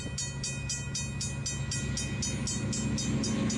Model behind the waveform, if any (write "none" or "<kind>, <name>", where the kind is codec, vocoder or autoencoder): none